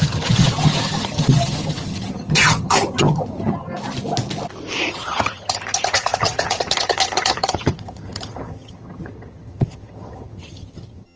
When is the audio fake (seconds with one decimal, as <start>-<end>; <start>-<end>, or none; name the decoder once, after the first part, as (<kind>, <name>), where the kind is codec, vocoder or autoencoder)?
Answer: 0.0-3.7 (vocoder, HiFi-GAN); 4.9-11.2